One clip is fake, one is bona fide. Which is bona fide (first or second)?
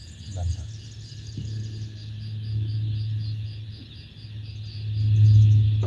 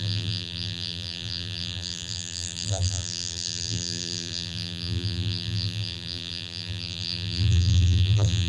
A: first